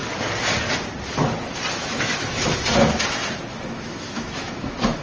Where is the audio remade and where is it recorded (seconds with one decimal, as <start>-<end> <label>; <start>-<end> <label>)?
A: 0.0-1.7 recorded; 1.7-2.6 remade; 2.6-3.5 recorded; 3.5-5.0 remade